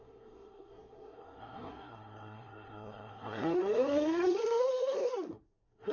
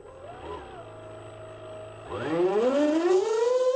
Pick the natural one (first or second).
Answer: second